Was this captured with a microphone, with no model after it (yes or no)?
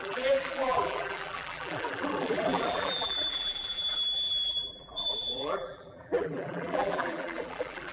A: no